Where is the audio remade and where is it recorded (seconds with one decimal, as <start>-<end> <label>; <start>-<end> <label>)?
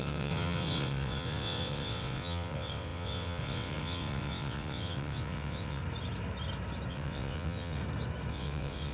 0.0-5.8 remade; 5.8-6.9 recorded; 6.9-7.8 remade; 7.8-8.3 recorded; 8.3-8.9 remade